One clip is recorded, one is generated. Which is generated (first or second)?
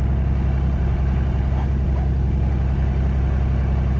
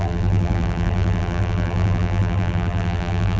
second